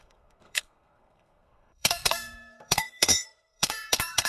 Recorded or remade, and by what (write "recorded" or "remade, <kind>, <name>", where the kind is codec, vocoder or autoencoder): remade, codec, SNAC